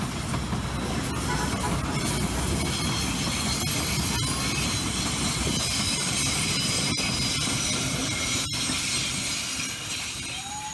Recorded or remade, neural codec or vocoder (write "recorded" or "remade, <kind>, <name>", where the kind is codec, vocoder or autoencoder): recorded